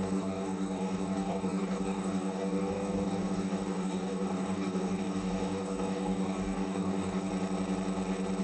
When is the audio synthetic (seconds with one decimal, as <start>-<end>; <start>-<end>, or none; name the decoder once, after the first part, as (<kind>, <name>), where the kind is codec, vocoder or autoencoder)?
0.0-7.3 (codec, DAC)